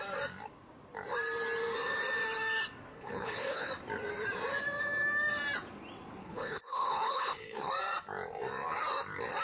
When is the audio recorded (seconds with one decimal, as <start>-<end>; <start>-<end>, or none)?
0.0-2.9; 3.7-6.2; 7.7-9.4